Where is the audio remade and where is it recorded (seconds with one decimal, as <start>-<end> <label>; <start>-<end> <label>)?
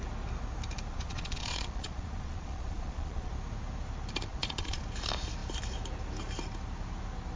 0.0-0.9 recorded; 0.9-3.3 remade; 3.3-4.3 recorded; 4.3-4.8 remade; 4.8-7.4 recorded